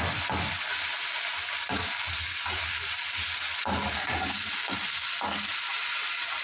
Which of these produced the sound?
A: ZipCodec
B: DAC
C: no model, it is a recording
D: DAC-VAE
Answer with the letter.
C